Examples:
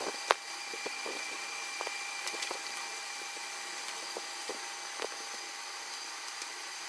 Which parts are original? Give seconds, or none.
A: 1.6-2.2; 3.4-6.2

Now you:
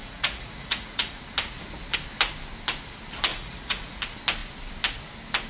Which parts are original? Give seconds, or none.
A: 1.2-3.3; 4.0-5.5

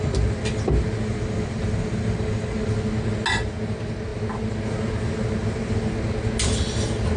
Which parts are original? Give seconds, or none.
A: 0.0-7.2

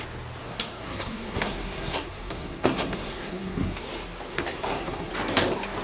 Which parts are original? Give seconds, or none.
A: 0.0-0.4; 3.9-4.3; 5.1-5.8

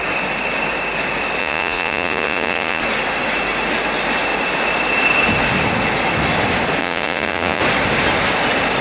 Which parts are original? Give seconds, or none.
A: 0.0-1.4; 2.8-6.8; 7.6-8.8

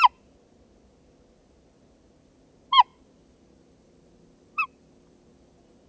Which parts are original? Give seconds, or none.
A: 0.0-5.9

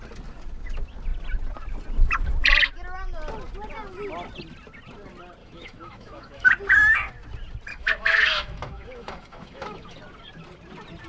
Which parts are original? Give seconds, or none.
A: 0.0-5.4; 6.5-7.7; 10.0-11.1

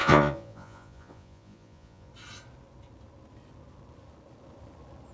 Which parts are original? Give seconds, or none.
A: 2.1-5.1